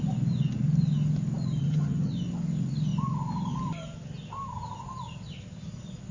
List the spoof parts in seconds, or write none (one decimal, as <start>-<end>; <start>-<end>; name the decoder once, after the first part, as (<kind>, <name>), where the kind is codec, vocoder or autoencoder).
1.6-2.1 (vocoder, HiFi-GAN)